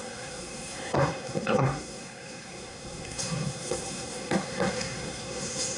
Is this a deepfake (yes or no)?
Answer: yes